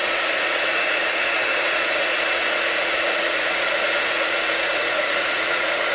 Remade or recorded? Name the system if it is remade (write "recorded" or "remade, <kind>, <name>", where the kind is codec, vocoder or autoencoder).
remade, vocoder, Vocos